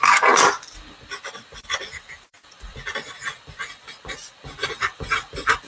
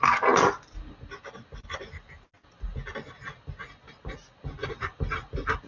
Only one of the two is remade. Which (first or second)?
first